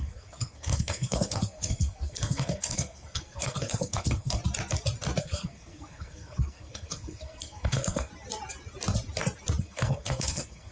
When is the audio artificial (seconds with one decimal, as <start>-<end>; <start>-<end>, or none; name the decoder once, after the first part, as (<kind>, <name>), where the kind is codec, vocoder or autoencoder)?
0.0-4.4 (codec, SNAC); 5.2-8.1; 9.6-10.7